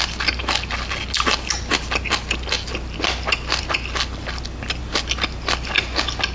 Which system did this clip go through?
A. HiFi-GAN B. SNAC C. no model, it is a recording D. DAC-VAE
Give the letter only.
C